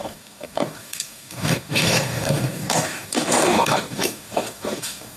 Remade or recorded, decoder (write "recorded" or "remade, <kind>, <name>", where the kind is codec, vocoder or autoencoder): remade, codec, DAC